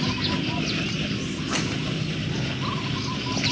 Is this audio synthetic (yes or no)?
no